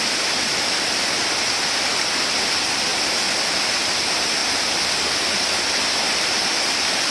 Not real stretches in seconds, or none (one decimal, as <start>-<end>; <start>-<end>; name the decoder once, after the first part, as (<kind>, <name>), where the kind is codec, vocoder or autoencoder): 2.9-3.7 (vocoder, BigVGAN v2)